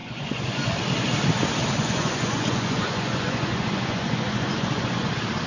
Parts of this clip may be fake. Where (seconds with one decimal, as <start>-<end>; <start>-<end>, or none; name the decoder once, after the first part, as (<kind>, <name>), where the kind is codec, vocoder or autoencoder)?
0.0-0.7 (vocoder, Vocos); 1.8-5.1